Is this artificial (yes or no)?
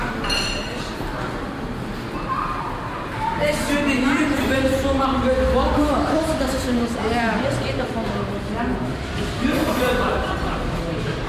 no